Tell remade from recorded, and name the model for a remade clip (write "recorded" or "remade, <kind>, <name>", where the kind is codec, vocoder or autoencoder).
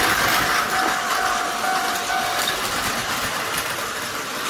recorded